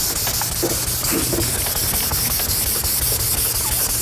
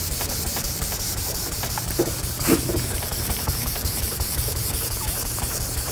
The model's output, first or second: second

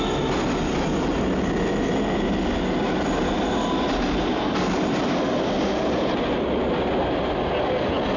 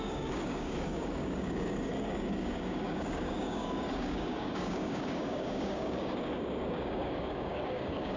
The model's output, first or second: second